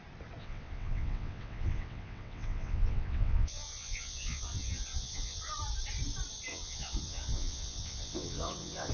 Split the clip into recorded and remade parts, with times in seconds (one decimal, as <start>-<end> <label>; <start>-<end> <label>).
0.0-0.4 recorded; 0.4-5.5 remade; 5.5-6.5 recorded; 6.5-8.9 remade